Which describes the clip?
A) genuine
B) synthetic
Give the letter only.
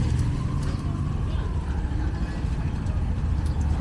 A